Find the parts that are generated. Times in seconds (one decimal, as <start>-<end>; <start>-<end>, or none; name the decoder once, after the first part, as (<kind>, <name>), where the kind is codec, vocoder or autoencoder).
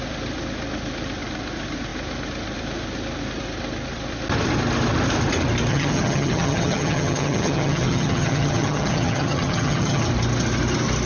5.7-10.0 (vocoder, HiFi-GAN)